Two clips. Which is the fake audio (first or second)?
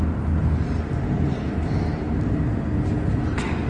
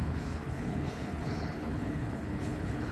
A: second